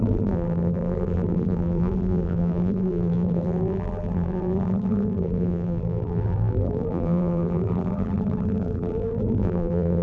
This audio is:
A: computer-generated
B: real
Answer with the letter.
A